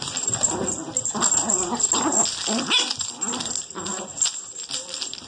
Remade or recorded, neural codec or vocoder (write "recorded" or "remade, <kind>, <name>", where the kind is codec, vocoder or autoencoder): recorded